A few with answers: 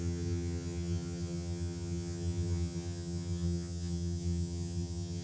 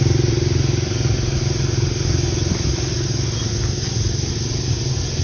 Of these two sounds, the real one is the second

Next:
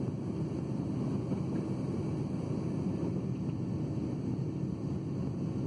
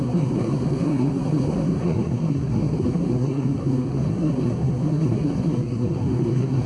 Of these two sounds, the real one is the first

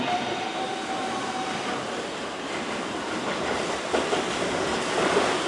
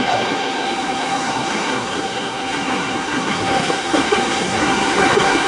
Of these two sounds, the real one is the first